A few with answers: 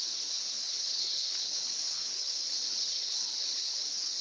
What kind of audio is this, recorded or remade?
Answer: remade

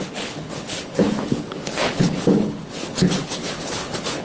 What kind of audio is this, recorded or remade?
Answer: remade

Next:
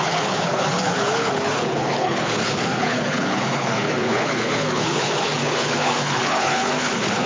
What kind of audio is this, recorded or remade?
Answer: remade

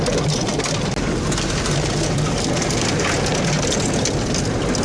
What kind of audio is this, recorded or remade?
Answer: recorded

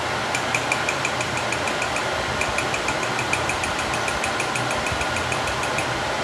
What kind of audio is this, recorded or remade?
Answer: recorded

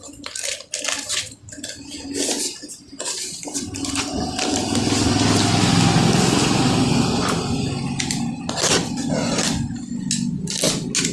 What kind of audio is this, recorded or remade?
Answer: recorded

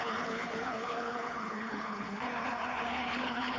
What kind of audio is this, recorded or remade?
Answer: remade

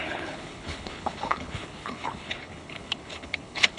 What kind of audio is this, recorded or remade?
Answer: remade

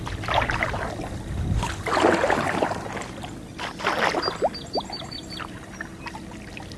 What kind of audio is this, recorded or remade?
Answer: recorded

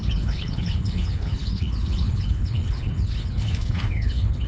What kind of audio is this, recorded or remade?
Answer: remade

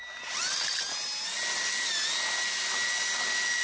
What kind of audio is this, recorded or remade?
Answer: recorded